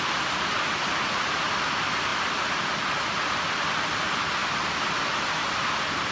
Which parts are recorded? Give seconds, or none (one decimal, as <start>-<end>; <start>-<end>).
0.0-6.1

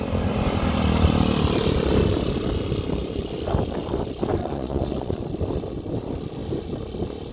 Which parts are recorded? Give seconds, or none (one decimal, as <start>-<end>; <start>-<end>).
0.0-4.4; 5.2-7.3

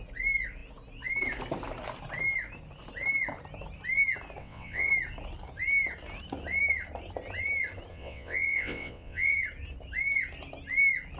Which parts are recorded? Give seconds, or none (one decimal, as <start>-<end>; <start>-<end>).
0.0-4.4; 4.9-7.9; 9.4-11.2

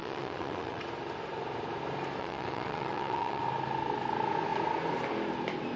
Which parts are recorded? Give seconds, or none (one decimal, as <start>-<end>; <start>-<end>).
0.8-2.2; 3.4-5.8

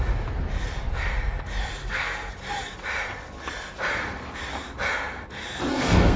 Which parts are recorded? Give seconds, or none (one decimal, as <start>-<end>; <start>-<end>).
0.0-1.8; 2.3-5.7